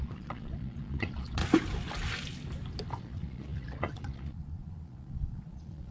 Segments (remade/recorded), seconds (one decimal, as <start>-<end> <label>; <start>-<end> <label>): 0.0-1.4 remade; 1.4-3.0 recorded; 3.0-5.9 remade